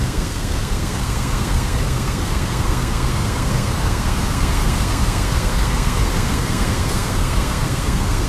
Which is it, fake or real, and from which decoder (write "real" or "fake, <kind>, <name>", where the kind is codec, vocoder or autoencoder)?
fake, codec, SNAC